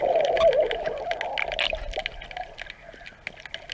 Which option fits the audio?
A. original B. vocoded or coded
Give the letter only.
A